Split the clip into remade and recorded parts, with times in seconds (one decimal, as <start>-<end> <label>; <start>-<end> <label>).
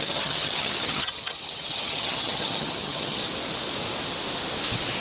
0.0-3.2 remade; 3.2-5.0 recorded